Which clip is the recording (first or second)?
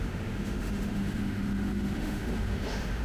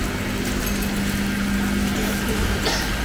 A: second